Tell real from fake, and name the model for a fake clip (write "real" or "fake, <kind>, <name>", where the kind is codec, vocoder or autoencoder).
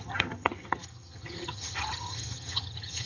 fake, vocoder, HiFi-GAN